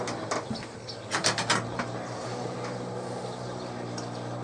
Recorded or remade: recorded